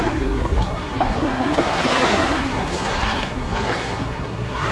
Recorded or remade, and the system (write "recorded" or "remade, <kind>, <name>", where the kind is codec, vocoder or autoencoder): remade, codec, SNAC